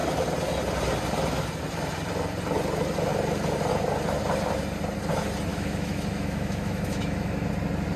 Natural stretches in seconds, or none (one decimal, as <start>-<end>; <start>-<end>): 0.0-5.5; 7.5-8.0